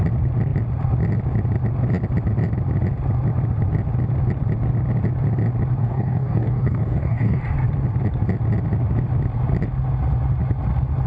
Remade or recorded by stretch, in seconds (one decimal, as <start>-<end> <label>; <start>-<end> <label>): 0.0-5.8 recorded; 5.8-7.4 remade; 7.4-11.1 recorded